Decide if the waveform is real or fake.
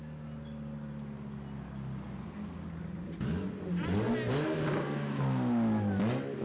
real